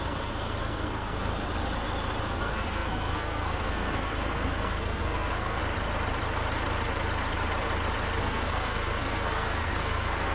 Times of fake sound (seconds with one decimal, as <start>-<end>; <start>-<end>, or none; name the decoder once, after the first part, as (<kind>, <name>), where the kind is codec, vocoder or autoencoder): 0.0-1.3 (codec, SNAC); 2.2-5.6; 8.2-10.3